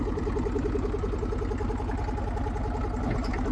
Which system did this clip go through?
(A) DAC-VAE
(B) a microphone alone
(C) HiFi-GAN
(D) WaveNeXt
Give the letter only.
B